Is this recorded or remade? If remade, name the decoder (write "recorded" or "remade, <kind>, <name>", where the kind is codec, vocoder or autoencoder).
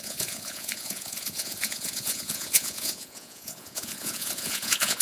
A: remade, vocoder, Vocos